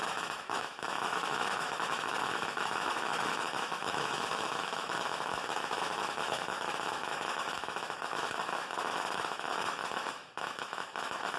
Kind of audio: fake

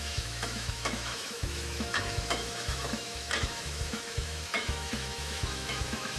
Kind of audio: fake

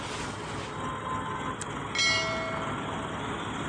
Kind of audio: real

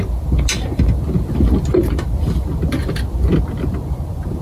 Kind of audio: real